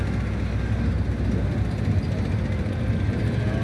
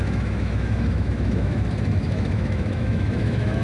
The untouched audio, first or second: first